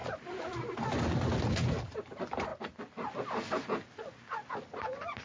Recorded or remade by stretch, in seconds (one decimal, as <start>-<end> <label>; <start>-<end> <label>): 0.0-1.2 remade; 1.2-5.2 recorded